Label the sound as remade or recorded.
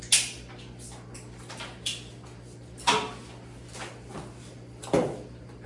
recorded